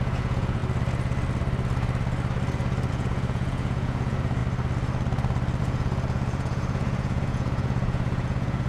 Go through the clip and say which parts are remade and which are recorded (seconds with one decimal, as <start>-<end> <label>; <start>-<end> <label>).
0.0-0.6 remade; 0.6-2.9 recorded; 2.9-4.4 remade; 4.4-5.6 recorded; 5.6-8.7 remade